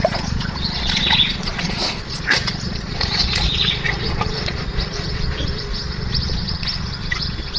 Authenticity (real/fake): fake